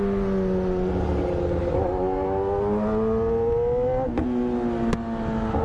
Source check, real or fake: real